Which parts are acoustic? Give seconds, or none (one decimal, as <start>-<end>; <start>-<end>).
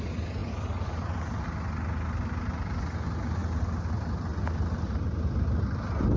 0.0-6.2